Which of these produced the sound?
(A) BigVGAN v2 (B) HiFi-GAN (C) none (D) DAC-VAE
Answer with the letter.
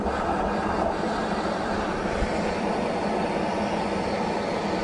C